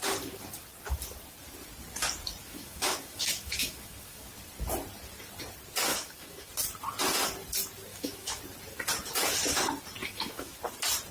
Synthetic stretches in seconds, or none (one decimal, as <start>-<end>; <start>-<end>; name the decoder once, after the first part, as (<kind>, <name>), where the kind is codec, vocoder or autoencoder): 2.4-4.3 (autoencoder, DAC-VAE); 5.9-6.5; 7.9-8.4; 10.0-10.6

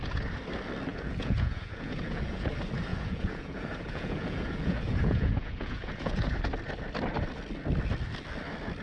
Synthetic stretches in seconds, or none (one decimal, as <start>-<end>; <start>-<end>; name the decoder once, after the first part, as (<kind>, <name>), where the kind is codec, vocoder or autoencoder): 0.9-2.5 (vocoder, Vocos); 2.9-6.4

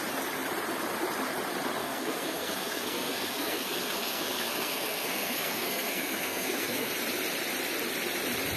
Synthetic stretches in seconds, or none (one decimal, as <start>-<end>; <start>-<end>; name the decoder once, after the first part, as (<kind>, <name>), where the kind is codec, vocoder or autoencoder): 1.8-6.9 (codec, SNAC)

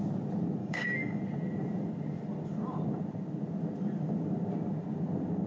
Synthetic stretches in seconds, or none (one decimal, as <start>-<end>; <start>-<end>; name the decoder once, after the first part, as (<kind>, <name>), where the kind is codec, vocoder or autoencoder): 0.6-1.2 (codec, DAC)

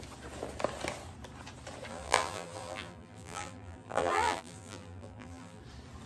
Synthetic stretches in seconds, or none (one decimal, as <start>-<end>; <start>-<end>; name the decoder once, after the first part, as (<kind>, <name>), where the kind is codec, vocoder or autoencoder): 1.9-5.6 (vocoder, BigVGAN v2)

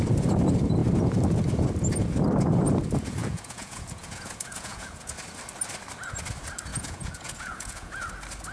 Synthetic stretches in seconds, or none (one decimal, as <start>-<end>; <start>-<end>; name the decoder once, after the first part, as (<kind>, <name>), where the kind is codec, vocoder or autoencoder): 3.2-5.1 (vocoder, Vocos); 6.7-8.1